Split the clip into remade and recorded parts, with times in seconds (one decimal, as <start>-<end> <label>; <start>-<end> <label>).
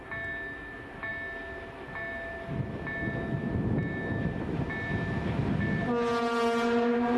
0.0-7.2 recorded